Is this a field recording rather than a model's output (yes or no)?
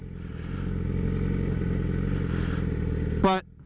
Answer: yes